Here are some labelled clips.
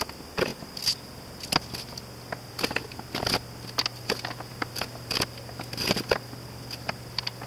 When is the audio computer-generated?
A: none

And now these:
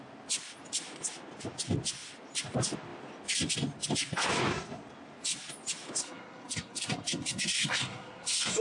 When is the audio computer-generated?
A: 6.0-8.6 (codec, SNAC)